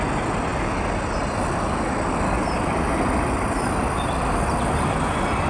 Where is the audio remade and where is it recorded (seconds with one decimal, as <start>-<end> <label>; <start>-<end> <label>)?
0.0-5.5 recorded